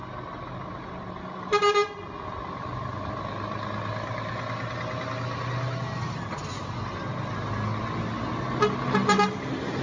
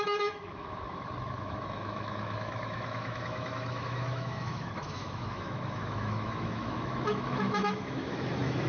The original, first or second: first